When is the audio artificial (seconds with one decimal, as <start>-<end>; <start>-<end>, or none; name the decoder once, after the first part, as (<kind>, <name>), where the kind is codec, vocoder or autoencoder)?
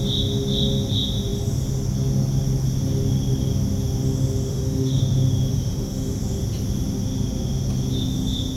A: 4.5-5.0 (autoencoder, DAC-VAE); 5.5-6.2